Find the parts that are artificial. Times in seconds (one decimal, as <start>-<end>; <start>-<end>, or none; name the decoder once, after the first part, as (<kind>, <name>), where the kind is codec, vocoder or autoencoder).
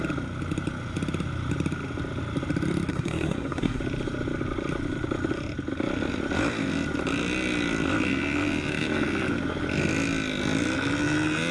2.9-3.8 (codec, SNAC)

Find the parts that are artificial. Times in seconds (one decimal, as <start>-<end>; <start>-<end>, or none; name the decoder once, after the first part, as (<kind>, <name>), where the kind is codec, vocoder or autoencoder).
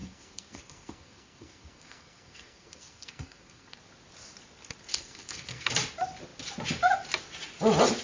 0.0-3.8 (codec, SNAC); 4.9-5.7